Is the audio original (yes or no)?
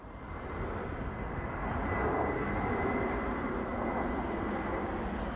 yes